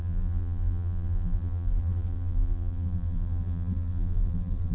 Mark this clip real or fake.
fake